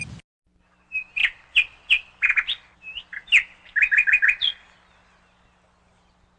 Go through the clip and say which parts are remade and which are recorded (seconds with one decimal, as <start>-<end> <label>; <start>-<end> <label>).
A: 0.0-6.4 recorded